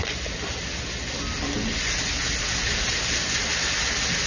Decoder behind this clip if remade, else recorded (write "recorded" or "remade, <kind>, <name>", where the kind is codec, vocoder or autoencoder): recorded